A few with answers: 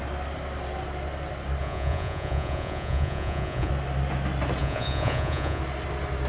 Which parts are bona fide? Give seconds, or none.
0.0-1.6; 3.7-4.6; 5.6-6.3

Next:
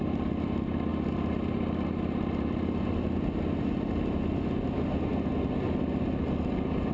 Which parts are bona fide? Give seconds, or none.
0.0-6.9

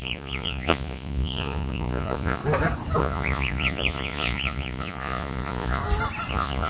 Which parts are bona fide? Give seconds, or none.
2.4-3.0; 5.8-6.3